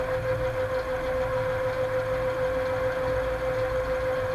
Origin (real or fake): real